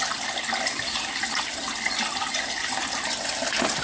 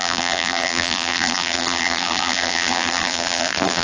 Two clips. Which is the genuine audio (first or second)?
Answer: first